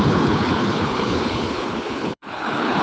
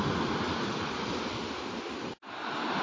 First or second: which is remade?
first